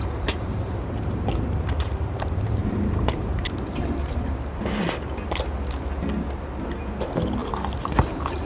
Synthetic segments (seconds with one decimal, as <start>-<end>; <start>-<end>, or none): 0.0-4.6; 7.4-8.5